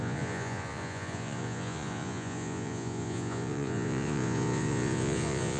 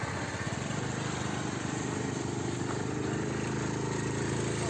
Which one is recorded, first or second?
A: second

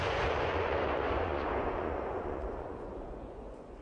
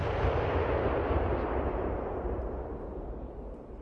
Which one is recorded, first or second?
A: second